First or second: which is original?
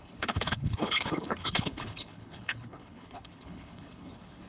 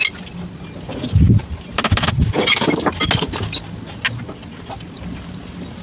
second